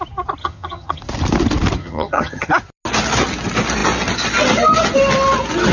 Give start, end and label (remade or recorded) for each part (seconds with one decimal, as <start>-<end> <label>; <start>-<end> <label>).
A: 0.0-0.4 recorded; 0.4-1.0 remade; 1.0-1.8 recorded; 1.8-2.5 remade; 2.5-5.7 recorded